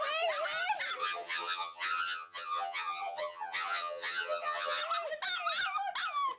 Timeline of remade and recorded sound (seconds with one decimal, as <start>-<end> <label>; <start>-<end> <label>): 0.0-1.0 recorded; 1.0-4.8 remade; 4.8-6.4 recorded

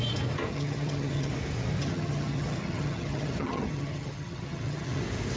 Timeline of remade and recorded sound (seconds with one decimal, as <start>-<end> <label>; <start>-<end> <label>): 0.0-0.5 recorded; 0.5-1.3 remade; 1.3-1.8 recorded; 1.8-5.0 remade; 5.0-5.4 recorded

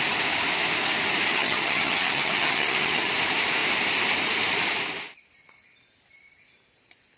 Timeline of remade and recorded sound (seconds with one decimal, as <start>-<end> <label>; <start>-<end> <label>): 0.0-1.3 recorded; 1.3-3.1 remade; 3.1-7.2 recorded

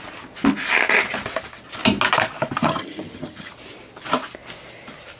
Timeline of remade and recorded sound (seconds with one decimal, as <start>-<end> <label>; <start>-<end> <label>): 0.0-2.6 recorded; 2.6-3.5 remade; 3.5-5.2 recorded